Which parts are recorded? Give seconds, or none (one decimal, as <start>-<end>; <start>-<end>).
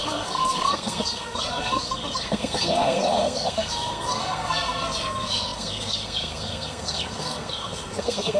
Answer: none